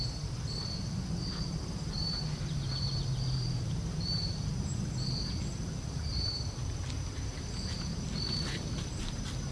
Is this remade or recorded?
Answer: remade